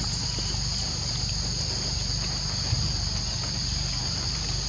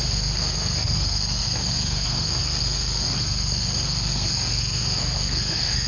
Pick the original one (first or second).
first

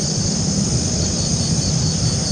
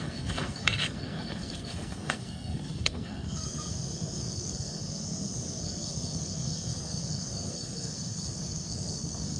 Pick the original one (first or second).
first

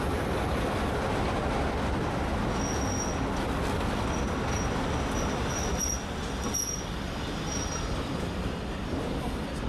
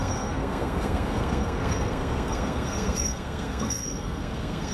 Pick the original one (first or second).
first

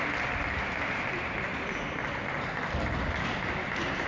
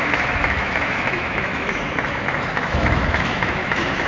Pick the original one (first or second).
first